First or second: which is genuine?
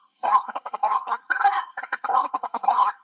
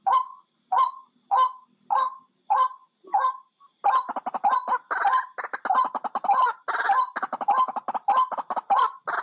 second